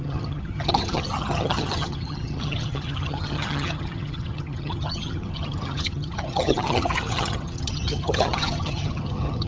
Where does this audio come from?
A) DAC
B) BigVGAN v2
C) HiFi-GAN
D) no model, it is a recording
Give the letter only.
C